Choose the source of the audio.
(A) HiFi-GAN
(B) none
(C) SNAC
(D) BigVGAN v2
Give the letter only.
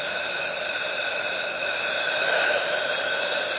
B